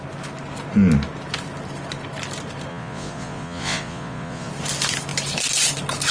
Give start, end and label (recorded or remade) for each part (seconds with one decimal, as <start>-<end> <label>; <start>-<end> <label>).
0.0-2.7 recorded; 2.7-4.5 remade; 4.5-6.1 recorded